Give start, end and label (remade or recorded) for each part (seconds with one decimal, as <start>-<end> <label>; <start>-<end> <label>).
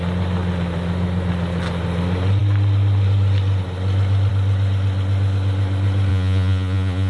0.0-6.1 recorded; 6.1-7.1 remade